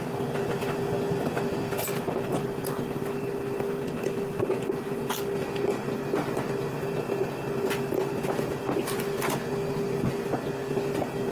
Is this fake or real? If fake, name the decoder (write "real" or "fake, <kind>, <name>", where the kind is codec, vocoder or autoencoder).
real